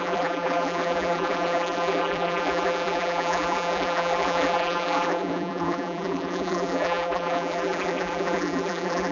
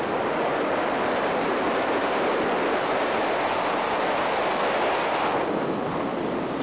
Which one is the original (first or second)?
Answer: second